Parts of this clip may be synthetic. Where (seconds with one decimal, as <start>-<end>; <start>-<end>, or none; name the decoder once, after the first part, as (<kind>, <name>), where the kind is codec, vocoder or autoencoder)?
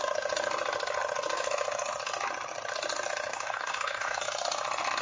3.3-4.2 (codec, SNAC)